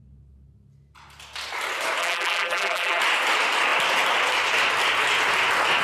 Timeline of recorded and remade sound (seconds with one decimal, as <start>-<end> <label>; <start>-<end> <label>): 0.0-2.0 recorded; 2.0-3.0 remade; 3.0-5.8 recorded